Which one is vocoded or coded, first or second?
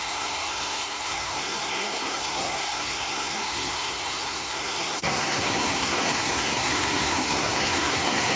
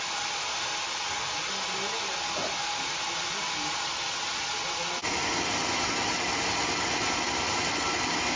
first